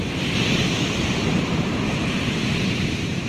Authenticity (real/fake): fake